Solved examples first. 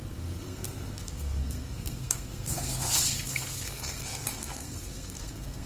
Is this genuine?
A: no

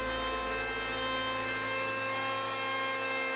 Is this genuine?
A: yes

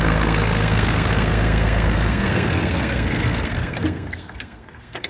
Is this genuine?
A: no